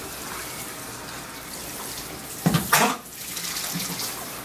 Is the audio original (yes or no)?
yes